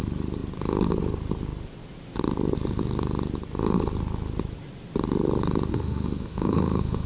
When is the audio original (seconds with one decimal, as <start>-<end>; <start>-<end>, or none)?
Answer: 0.0-5.7